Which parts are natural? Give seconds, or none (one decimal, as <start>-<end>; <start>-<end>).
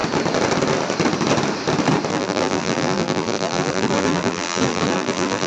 0.0-2.1